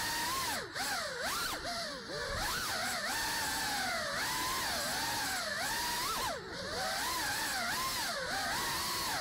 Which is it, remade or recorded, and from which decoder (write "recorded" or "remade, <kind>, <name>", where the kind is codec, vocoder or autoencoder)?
recorded